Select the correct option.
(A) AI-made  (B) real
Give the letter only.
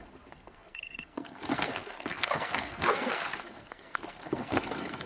A